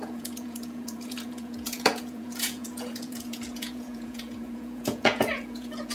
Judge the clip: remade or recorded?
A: remade